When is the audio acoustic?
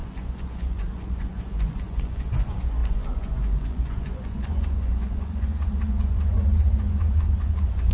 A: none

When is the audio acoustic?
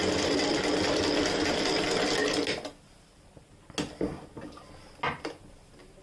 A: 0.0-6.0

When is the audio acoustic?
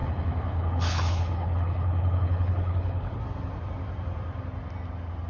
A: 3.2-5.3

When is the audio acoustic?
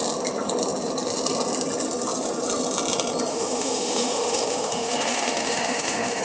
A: 0.0-3.3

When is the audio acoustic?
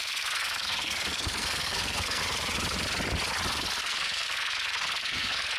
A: 2.2-3.8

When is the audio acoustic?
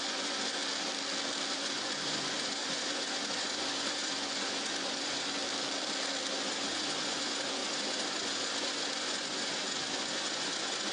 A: 0.6-1.5; 5.4-6.3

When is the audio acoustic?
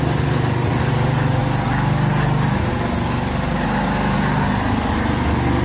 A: 0.0-5.6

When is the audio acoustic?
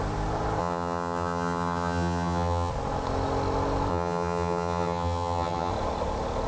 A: 0.0-0.6; 2.7-3.9; 5.7-6.5